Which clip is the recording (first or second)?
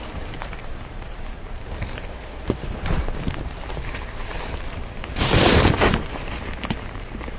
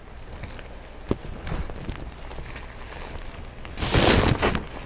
second